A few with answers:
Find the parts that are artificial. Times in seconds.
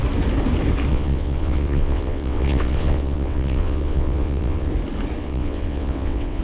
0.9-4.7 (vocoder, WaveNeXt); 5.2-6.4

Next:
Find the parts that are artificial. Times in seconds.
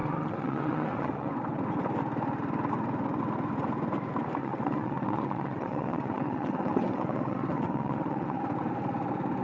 0.0-1.3 (vocoder, WaveNeXt); 4.4-8.4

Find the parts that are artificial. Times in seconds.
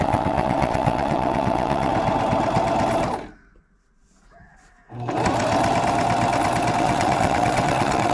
0.0-1.9 (vocoder, WaveNeXt); 6.8-8.1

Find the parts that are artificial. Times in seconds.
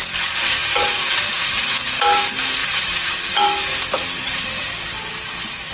none